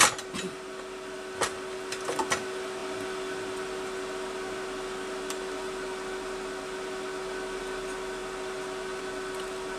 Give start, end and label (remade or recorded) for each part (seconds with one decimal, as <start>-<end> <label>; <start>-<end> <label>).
0.0-9.8 recorded